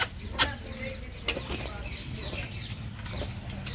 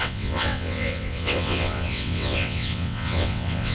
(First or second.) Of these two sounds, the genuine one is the first